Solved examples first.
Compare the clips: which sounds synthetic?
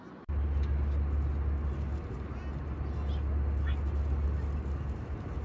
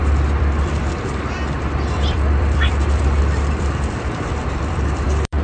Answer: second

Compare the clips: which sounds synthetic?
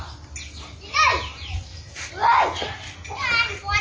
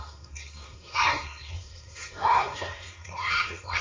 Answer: second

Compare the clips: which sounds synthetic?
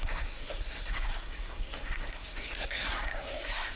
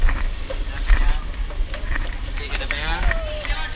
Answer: first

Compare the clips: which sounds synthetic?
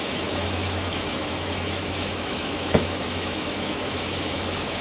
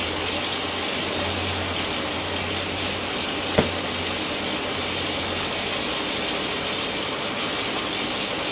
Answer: first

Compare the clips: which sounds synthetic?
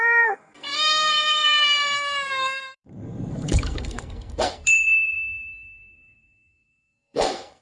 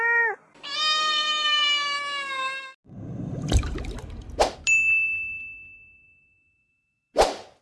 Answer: first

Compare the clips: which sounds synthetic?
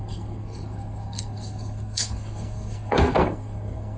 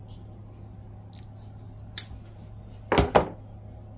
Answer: first